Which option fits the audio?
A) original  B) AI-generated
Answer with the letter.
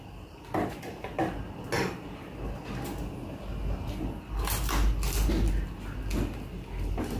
A